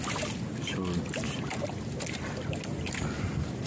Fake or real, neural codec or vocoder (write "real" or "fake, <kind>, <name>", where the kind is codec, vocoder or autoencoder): real